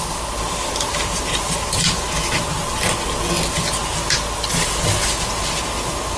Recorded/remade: recorded